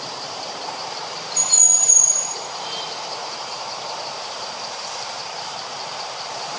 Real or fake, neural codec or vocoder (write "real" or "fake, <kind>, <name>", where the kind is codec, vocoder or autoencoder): fake, vocoder, BigVGAN v2